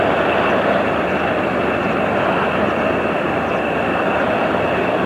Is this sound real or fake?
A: real